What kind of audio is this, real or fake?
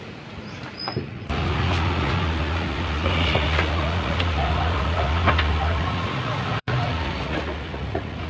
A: fake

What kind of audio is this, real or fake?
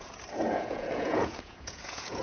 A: fake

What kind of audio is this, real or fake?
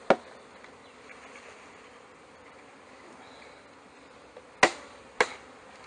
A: real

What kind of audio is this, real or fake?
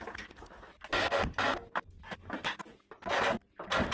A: real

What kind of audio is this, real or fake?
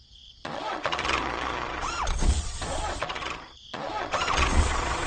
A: fake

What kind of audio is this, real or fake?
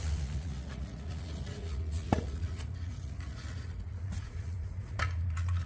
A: fake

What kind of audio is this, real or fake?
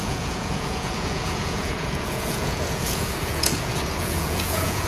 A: fake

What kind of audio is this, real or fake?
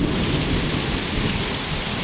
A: real